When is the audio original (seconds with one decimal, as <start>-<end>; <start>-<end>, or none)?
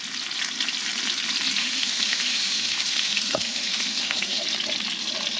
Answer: 0.0-1.6; 4.4-5.4